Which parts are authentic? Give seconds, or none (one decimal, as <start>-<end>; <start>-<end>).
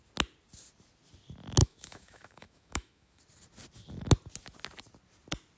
0.0-1.6; 3.2-5.6